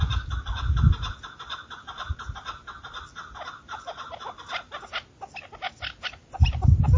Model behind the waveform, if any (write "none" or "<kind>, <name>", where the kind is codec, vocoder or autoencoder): none